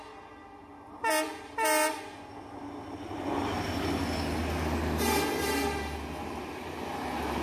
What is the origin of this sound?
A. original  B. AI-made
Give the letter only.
A